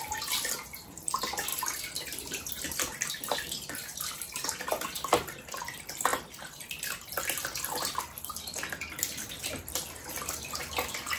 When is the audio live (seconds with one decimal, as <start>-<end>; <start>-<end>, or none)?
0.0-1.5; 4.7-6.1; 7.2-11.2